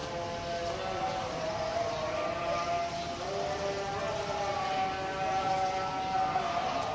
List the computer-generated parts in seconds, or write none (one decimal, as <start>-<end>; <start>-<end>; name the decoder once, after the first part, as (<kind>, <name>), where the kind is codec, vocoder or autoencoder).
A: 1.7-2.8 (vocoder, BigVGAN v2)